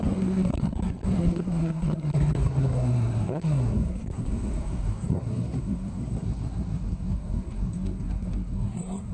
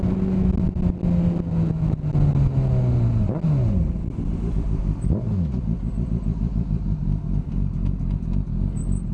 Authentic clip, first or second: second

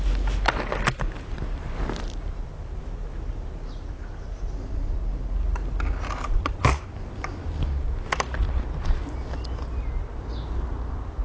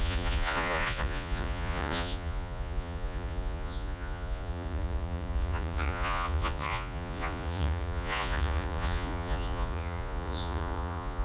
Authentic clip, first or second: first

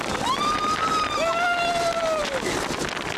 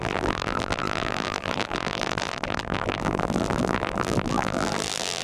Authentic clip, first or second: first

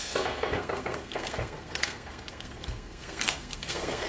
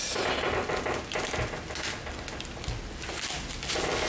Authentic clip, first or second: second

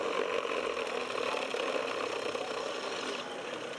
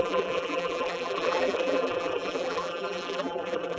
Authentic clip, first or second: first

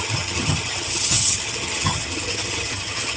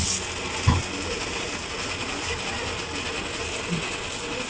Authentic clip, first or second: second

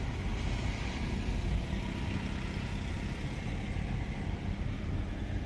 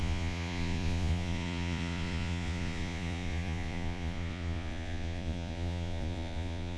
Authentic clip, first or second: first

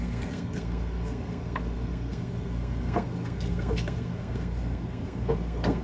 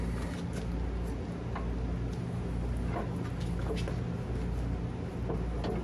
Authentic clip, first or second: second